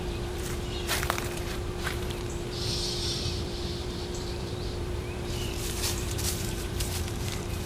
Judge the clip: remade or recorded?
remade